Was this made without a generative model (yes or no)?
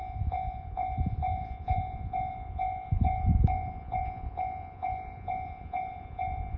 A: no